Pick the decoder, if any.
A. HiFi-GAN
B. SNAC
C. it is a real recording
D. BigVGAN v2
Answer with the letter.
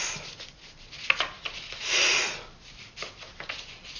C